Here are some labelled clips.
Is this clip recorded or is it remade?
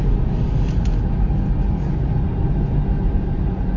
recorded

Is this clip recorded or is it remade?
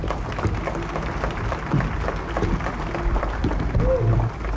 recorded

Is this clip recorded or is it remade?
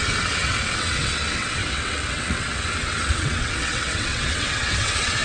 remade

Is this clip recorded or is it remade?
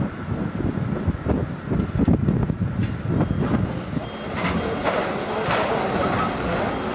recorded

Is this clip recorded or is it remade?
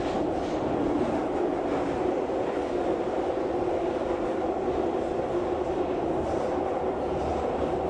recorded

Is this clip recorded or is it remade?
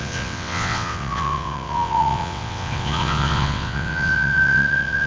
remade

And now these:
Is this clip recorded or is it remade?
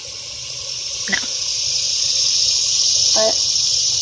recorded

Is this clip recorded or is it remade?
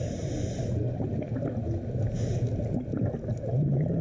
recorded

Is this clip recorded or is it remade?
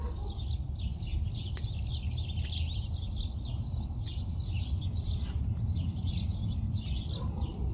recorded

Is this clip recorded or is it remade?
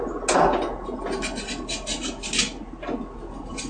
recorded